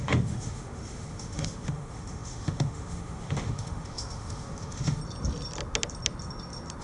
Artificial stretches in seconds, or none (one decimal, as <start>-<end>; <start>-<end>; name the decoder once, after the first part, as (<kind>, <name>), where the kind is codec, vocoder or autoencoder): 0.0-5.0 (autoencoder, DAC-VAE)

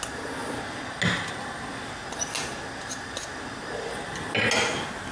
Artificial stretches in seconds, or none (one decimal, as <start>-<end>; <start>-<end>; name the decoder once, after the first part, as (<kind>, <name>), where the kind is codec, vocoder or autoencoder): none

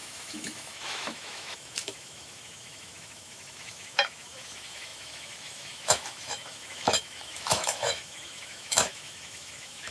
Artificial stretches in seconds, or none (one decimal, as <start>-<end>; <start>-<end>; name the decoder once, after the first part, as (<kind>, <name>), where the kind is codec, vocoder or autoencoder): 0.0-9.9 (autoencoder, DAC-VAE)

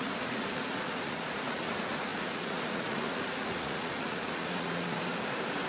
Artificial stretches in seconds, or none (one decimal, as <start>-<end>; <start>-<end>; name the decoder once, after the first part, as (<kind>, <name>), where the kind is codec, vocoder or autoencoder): 0.0-5.1 (vocoder, Vocos)

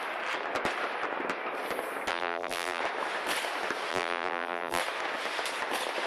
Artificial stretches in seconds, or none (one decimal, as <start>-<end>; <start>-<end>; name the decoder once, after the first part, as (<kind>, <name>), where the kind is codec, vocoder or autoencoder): 2.1-2.8 (vocoder, BigVGAN v2); 3.9-4.8

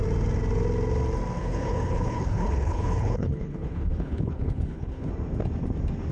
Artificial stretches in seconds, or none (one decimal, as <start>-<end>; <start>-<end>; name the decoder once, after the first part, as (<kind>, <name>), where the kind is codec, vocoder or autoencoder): 1.4-5.1 (codec, HILCodec)